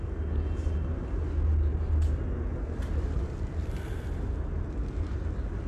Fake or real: real